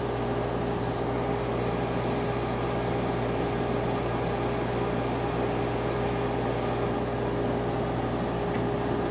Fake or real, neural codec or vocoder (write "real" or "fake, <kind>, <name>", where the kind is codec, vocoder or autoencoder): real